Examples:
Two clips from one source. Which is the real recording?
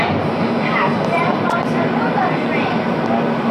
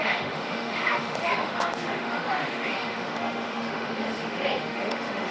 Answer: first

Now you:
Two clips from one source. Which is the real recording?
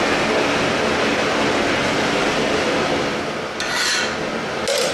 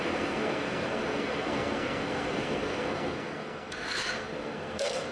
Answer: first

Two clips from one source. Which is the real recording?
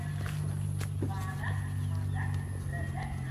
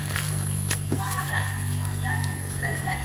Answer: first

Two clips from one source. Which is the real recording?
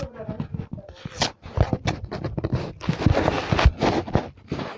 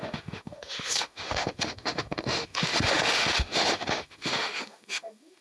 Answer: first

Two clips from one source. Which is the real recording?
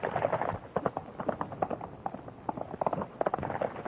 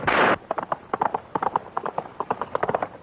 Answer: first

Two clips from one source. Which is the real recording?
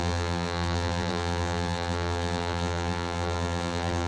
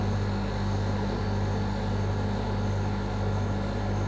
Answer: second